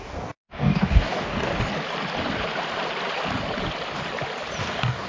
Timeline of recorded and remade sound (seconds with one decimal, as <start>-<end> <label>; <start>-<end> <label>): 0.0-1.5 remade; 1.5-4.6 recorded; 4.6-5.1 remade